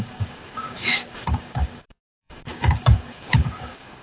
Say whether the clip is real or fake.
fake